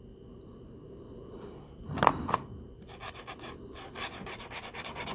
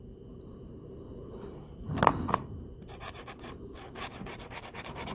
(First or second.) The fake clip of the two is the second